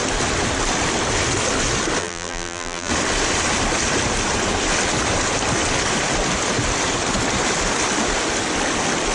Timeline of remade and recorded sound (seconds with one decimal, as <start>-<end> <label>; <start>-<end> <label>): 0.0-2.0 recorded; 2.0-2.9 remade; 2.9-9.1 recorded